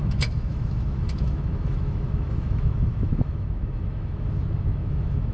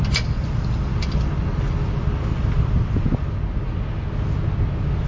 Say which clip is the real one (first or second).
second